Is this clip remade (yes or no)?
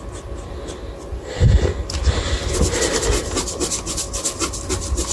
no